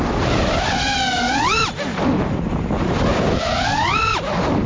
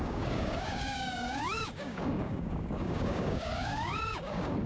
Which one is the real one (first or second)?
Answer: first